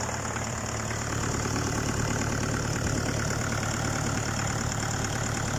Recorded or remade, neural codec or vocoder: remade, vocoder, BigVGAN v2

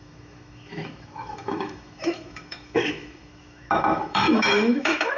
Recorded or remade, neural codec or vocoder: remade, autoencoder, DAC-VAE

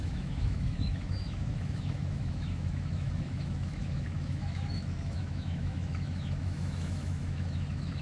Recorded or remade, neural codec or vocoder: remade, autoencoder, DAC-VAE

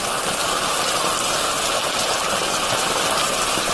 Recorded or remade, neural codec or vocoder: remade, vocoder, BigVGAN v2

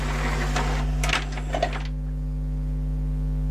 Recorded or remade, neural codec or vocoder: recorded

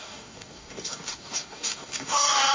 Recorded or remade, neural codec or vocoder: remade, codec, DAC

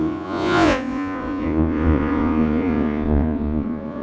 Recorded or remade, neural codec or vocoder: remade, vocoder, Vocos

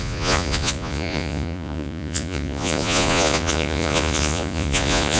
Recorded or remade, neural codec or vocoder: remade, vocoder, Vocos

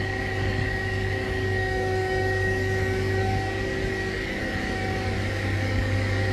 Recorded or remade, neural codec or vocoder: remade, codec, DAC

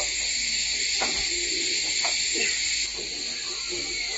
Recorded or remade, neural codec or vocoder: recorded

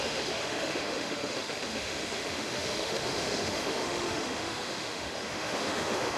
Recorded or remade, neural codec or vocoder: remade, autoencoder, DAC-VAE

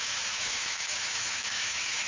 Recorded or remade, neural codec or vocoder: remade, autoencoder, DAC-VAE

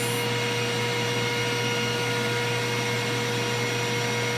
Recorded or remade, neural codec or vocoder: recorded